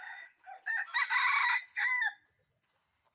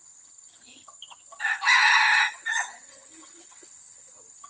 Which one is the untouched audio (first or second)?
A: first